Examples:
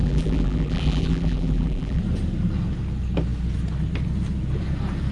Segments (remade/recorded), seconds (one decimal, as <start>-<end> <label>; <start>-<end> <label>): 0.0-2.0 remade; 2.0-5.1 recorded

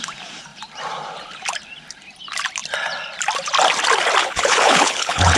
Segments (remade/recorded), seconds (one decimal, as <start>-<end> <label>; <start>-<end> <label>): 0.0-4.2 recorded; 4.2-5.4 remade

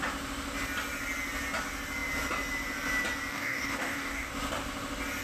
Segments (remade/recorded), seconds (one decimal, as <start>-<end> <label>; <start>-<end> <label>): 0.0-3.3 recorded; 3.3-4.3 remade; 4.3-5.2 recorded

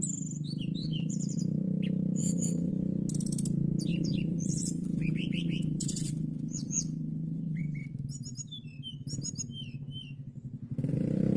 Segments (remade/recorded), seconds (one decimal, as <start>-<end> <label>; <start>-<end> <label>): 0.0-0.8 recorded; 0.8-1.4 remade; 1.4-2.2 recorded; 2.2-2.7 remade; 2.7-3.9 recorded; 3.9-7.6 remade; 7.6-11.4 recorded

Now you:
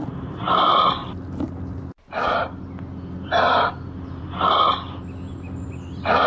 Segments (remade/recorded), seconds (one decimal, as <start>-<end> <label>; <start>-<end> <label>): 0.0-6.3 recorded